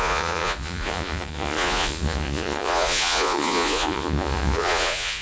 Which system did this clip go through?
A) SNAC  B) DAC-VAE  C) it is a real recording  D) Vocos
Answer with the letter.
D